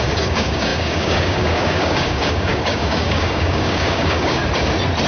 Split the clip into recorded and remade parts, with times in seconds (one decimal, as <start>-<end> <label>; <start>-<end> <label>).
0.0-4.4 remade; 4.4-5.1 recorded